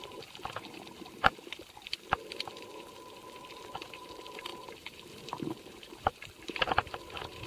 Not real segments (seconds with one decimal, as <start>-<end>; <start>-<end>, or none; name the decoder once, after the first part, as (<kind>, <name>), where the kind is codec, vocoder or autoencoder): 0.0-3.2 (vocoder, BigVGAN v2); 3.7-7.5

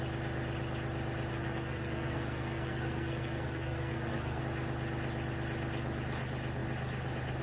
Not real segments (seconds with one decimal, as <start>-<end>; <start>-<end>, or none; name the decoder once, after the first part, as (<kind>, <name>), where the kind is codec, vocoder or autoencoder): 1.3-4.4 (codec, SNAC)

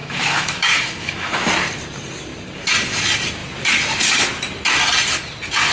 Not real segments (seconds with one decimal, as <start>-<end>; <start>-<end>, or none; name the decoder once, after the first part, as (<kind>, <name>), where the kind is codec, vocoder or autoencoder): 0.0-1.5 (autoencoder, DAC-VAE)

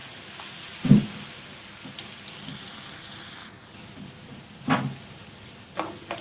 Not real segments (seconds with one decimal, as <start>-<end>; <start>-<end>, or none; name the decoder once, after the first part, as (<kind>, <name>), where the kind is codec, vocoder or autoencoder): none

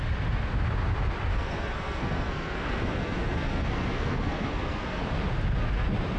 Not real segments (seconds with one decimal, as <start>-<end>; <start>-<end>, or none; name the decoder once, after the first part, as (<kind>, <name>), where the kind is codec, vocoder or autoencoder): 1.3-5.0 (codec, SNAC)